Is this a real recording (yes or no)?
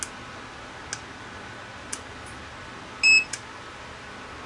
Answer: yes